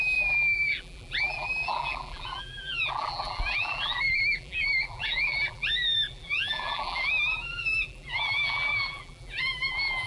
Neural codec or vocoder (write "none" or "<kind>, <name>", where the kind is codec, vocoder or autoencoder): vocoder, BigVGAN v2